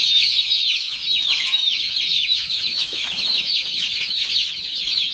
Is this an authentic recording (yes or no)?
no